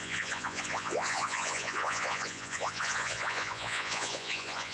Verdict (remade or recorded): remade